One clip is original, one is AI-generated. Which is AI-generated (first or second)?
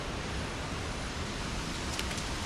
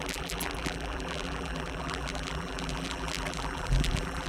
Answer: second